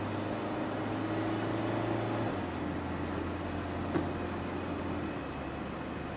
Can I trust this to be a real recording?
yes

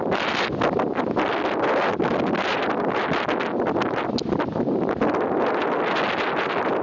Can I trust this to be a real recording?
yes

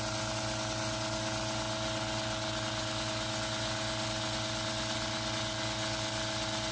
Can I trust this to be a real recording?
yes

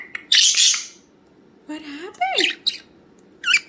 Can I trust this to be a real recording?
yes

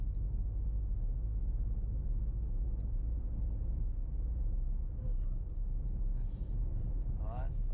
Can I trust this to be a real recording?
yes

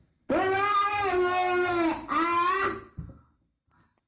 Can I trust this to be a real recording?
yes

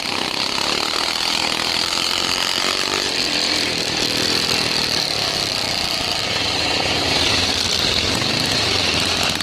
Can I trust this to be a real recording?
no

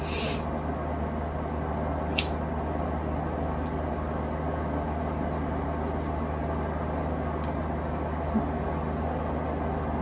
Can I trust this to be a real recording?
yes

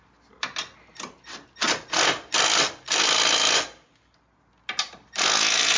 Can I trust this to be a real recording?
yes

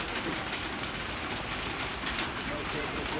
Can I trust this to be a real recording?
no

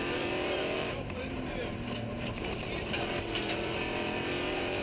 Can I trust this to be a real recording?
no